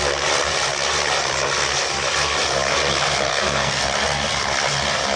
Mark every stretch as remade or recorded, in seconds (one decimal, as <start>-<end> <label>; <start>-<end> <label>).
0.0-3.3 recorded; 3.3-3.8 remade; 3.8-5.2 recorded